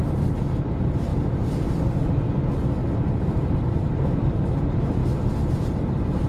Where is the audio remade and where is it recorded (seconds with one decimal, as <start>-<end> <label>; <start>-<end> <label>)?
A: 0.0-2.8 recorded; 2.8-4.6 remade; 4.6-6.3 recorded

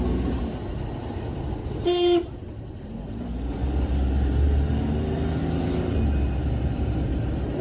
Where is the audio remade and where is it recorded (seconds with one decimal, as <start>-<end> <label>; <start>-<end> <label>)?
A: 0.0-1.6 recorded; 1.6-4.7 remade; 4.7-7.6 recorded

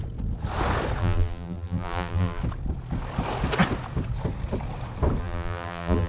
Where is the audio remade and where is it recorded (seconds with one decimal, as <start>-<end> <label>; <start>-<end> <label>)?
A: 0.0-1.0 recorded; 1.0-2.4 remade; 2.4-5.2 recorded; 5.2-6.1 remade

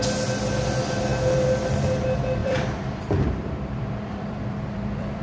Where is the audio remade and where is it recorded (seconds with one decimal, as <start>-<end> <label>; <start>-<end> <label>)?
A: 0.0-2.4 recorded; 2.4-5.2 remade